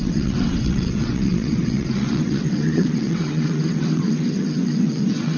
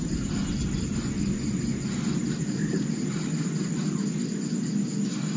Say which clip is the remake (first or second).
first